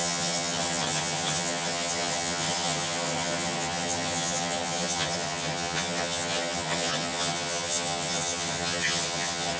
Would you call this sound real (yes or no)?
no